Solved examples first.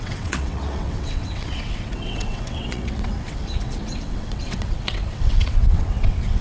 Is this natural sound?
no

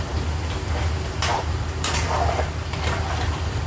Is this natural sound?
no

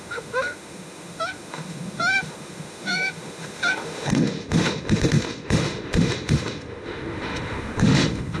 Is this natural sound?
no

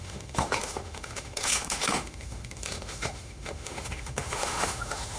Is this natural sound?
no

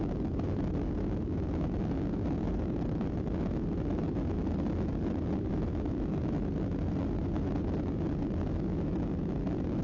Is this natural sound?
no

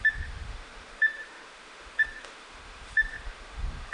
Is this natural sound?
no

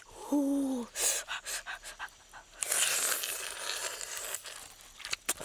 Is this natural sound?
yes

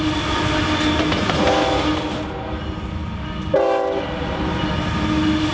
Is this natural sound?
yes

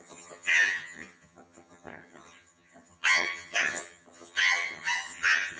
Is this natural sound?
no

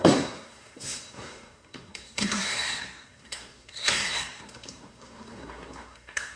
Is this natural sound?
no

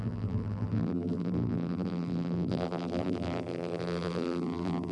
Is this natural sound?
no